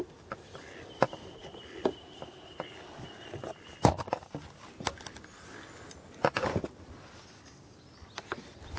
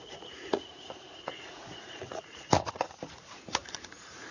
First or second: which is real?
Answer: first